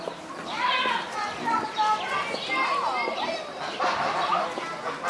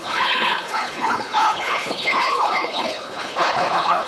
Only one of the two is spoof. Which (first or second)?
second